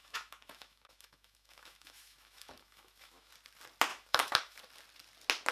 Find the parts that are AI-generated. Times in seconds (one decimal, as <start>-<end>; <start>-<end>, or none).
0.0-3.3; 3.9-4.6